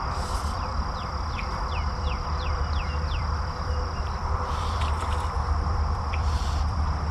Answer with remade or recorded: remade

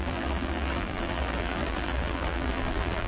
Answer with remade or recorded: remade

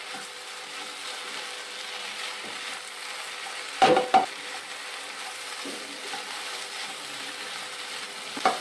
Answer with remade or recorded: remade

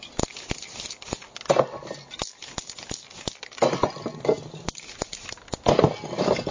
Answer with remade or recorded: recorded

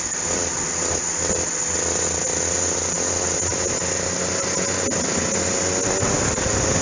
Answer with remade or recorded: recorded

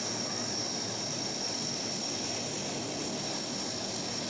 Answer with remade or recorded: recorded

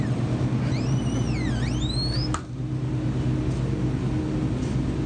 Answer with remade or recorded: recorded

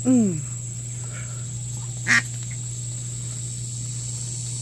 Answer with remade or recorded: recorded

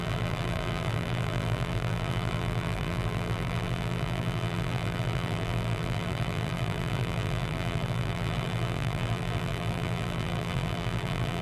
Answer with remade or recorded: remade